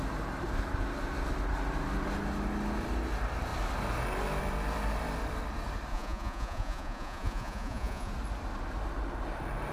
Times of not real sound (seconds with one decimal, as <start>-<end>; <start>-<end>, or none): 5.9-8.1